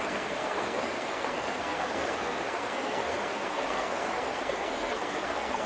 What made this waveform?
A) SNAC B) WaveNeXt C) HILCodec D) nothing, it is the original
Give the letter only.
A